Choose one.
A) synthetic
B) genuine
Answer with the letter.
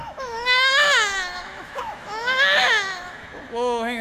A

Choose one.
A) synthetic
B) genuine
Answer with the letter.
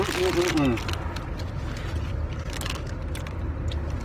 B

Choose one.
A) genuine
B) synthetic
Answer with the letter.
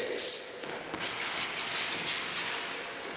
A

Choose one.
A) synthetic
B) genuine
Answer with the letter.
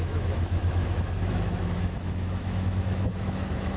A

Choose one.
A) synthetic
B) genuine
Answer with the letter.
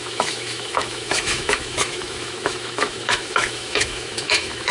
A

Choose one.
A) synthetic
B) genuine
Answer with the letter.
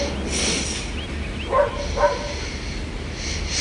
B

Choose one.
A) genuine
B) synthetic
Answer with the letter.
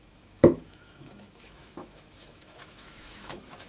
B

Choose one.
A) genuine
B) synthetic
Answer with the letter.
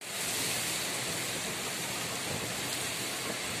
A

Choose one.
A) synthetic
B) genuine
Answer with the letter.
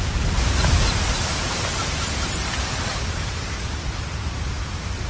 B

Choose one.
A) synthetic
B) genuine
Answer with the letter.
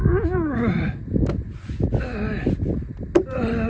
B